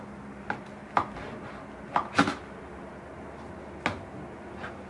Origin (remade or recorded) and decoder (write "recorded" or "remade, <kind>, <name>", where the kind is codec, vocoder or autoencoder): recorded